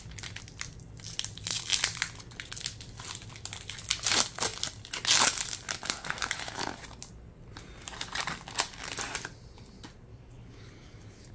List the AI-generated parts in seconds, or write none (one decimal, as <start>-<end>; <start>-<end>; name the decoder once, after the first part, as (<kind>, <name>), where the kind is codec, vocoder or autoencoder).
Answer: 10.1-11.3 (codec, DAC)